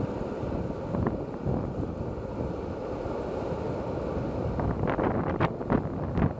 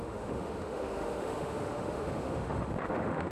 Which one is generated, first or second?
second